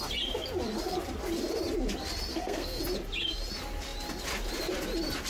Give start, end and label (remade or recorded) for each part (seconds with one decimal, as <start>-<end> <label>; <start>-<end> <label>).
0.0-2.3 recorded; 2.3-2.8 remade; 2.8-5.3 recorded